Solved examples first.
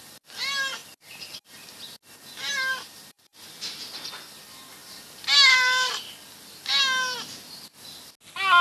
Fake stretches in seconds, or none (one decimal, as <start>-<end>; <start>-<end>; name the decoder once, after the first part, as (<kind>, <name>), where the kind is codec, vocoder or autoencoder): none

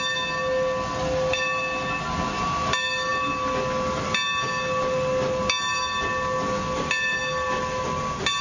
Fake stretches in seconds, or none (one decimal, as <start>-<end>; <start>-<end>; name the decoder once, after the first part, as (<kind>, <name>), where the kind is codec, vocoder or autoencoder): none

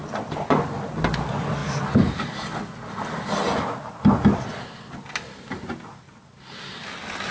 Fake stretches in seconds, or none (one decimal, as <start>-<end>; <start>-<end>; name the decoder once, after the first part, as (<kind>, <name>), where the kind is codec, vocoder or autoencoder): none

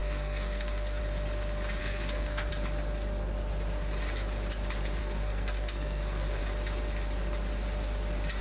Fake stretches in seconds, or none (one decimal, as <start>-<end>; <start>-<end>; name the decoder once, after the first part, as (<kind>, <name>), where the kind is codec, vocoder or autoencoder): 0.0-1.0 (codec, SNAC); 1.8-2.5; 5.0-6.4